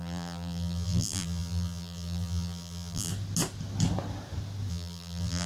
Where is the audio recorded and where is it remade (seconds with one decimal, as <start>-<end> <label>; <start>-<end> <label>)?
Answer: 0.0-3.1 remade; 3.1-4.7 recorded; 4.7-5.5 remade